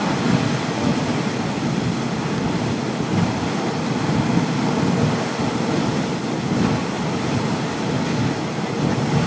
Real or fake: real